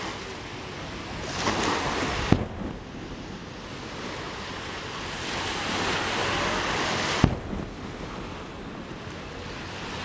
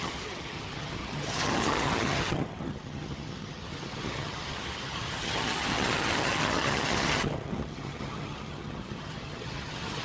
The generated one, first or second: second